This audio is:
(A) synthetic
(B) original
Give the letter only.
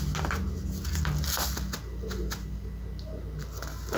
B